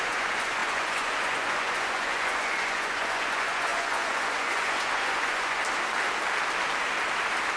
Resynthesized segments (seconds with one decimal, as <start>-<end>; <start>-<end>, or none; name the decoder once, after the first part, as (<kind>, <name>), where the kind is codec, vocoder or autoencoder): 0.0-5.6 (vocoder, Vocos)